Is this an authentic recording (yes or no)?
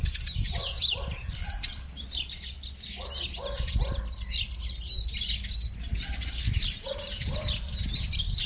yes